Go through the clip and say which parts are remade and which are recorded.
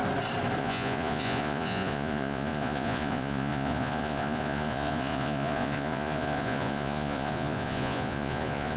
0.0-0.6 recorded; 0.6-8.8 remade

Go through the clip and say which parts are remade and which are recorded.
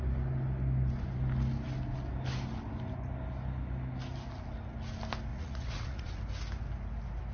0.0-5.3 recorded; 5.3-6.2 remade; 6.2-7.3 recorded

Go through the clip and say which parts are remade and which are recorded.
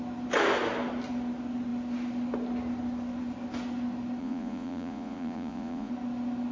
0.0-4.2 recorded; 4.2-5.9 remade; 5.9-6.5 recorded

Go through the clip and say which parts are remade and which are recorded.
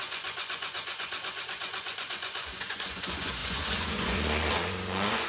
0.0-5.3 remade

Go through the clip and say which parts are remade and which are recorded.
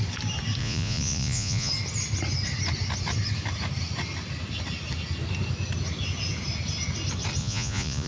0.0-0.6 recorded; 0.6-1.7 remade; 1.7-7.4 recorded; 7.4-8.1 remade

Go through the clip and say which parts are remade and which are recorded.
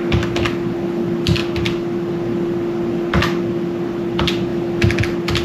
0.0-5.4 recorded